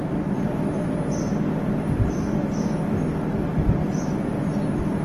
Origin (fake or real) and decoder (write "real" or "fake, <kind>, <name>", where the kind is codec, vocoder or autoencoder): real